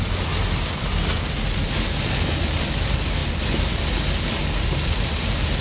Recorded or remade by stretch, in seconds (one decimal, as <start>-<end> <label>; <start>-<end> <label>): 0.0-3.2 recorded; 3.2-3.8 remade; 3.8-5.6 recorded